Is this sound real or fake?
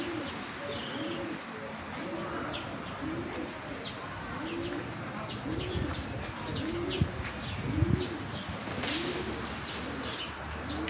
real